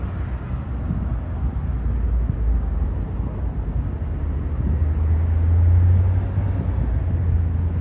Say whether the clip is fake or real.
real